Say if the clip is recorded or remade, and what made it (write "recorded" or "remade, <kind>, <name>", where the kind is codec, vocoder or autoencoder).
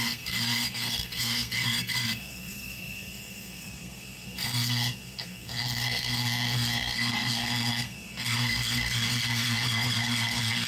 remade, codec, SNAC